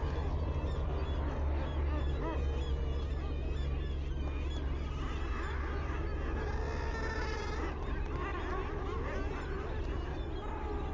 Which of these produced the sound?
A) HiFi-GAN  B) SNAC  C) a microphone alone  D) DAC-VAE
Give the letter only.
C